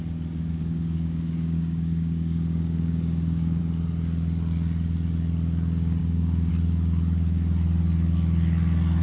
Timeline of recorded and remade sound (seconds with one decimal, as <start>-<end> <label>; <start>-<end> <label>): 0.0-0.6 recorded; 0.6-3.6 remade; 3.6-6.0 recorded; 6.0-6.5 remade; 6.5-9.0 recorded